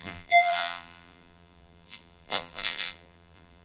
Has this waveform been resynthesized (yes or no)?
yes